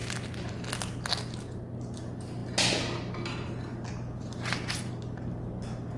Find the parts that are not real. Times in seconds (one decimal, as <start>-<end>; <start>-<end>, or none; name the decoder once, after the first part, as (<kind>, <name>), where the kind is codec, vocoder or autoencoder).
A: none